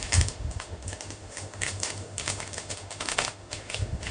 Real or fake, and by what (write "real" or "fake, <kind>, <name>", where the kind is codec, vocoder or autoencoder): fake, autoencoder, DAC-VAE